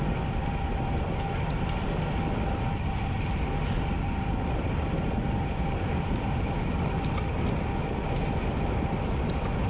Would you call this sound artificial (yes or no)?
no